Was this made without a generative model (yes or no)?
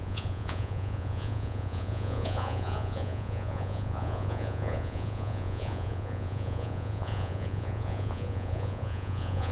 no